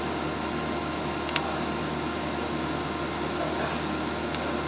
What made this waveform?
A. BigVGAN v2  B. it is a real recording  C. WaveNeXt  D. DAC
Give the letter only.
B